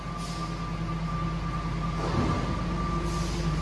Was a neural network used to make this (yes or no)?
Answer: no